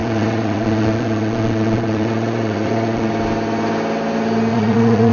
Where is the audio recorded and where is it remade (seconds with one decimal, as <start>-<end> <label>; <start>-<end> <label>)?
0.0-3.1 remade; 3.1-4.5 recorded; 4.5-5.1 remade